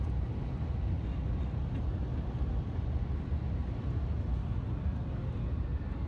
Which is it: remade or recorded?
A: recorded